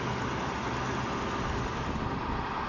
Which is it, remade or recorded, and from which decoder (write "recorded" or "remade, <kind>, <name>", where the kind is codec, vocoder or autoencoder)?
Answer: recorded